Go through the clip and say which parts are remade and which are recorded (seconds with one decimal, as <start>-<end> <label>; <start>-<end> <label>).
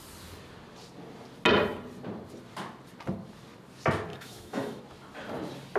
0.0-4.1 recorded; 4.1-4.8 remade; 4.8-5.8 recorded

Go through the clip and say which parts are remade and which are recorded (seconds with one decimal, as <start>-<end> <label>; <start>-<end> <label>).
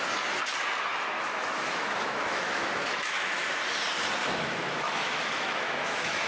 0.0-0.9 recorded; 0.9-3.4 remade; 3.4-4.2 recorded; 4.2-6.3 remade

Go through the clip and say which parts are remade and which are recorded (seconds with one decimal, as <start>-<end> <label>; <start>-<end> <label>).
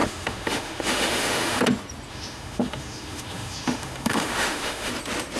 0.0-1.6 remade; 1.6-2.1 recorded; 2.1-4.9 remade; 4.9-5.4 recorded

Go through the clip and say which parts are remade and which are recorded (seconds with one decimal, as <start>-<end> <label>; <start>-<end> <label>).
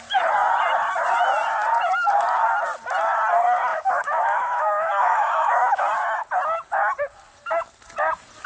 0.0-3.7 recorded; 3.7-5.8 remade; 5.8-8.5 recorded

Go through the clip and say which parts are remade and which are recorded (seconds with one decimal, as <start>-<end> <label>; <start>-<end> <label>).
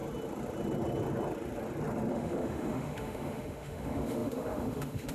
0.0-2.1 recorded; 2.1-5.1 remade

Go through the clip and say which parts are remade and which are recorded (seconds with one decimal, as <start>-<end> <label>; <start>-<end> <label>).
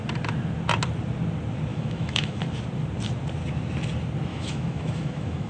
0.0-1.7 recorded; 1.7-2.4 remade; 2.4-4.3 recorded; 4.3-5.5 remade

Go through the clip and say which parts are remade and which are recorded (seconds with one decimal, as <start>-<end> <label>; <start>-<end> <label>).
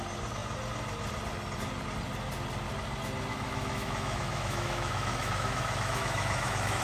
0.0-3.3 recorded; 3.3-6.8 remade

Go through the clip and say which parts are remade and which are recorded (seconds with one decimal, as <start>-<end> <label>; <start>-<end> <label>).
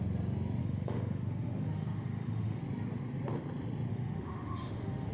0.0-0.6 recorded; 0.6-2.6 remade; 2.6-3.9 recorded; 3.9-5.1 remade